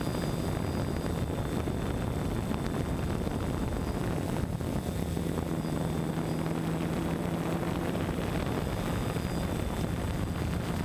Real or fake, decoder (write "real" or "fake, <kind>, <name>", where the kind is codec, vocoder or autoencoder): real